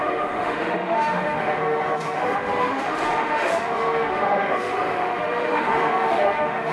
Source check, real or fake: fake